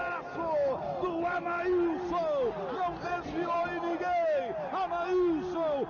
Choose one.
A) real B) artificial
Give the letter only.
A